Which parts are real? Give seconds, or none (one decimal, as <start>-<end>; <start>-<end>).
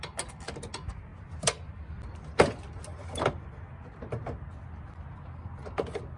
0.0-6.2